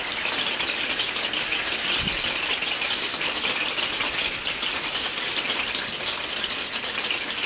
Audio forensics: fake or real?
real